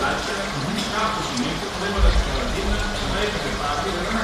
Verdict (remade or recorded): recorded